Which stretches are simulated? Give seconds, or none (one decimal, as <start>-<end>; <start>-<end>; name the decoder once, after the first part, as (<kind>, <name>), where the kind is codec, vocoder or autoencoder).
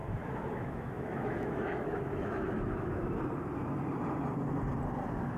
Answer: 0.0-3.2 (autoencoder, DAC-VAE)